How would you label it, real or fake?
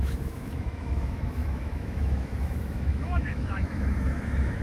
fake